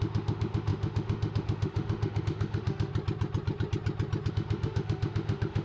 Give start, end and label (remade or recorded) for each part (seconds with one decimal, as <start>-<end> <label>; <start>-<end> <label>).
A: 0.0-2.9 remade; 2.9-4.3 recorded; 4.3-5.6 remade